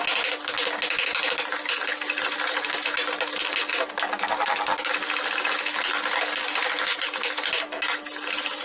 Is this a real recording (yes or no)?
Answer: yes